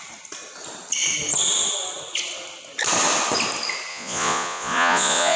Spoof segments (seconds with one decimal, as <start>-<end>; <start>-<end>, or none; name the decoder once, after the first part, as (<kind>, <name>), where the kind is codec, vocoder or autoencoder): 3.9-5.4 (vocoder, Vocos)